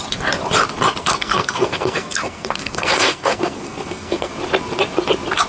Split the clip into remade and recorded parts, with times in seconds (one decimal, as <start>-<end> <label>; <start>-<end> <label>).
0.0-1.0 recorded; 1.0-4.3 remade; 4.3-5.5 recorded